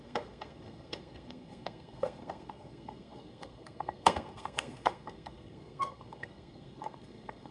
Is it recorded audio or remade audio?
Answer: remade